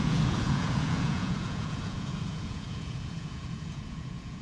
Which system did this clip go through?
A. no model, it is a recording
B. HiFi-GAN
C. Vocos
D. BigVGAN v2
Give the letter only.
C